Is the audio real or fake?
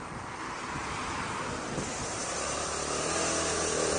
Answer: real